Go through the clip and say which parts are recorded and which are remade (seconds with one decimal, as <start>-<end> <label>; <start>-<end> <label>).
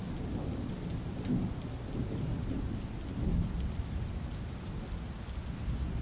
0.0-6.0 recorded